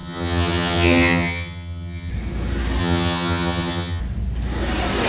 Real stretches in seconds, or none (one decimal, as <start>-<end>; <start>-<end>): 2.1-2.8; 4.0-5.1